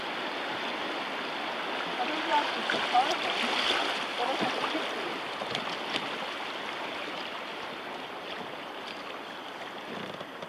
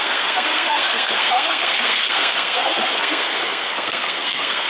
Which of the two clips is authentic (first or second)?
first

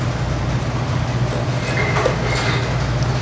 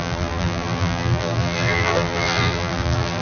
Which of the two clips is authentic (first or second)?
first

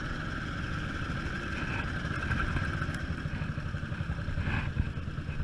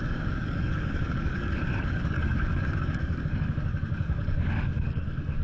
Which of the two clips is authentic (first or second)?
first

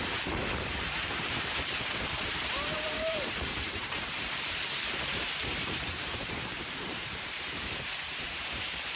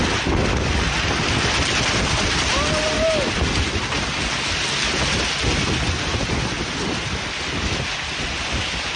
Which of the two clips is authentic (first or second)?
second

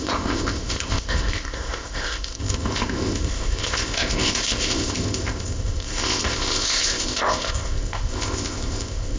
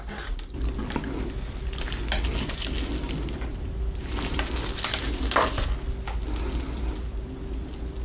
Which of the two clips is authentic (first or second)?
second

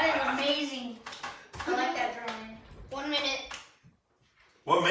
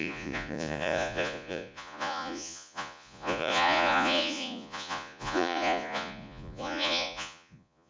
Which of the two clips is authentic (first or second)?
first